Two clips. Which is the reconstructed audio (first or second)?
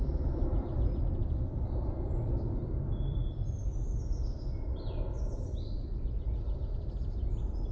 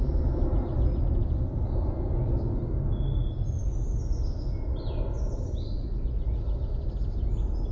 first